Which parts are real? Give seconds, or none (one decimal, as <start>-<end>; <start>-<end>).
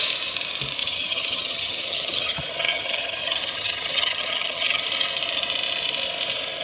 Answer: 0.0-0.8; 4.8-6.6